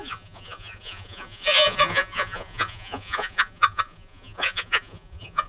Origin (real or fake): fake